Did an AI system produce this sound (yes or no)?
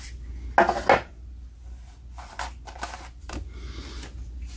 no